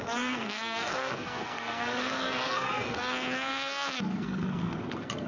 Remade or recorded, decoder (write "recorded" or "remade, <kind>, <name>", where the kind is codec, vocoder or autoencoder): remade, codec, SNAC